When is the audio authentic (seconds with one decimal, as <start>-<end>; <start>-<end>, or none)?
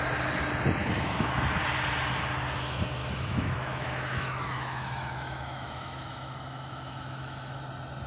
0.0-0.8; 1.4-3.0; 7.6-8.1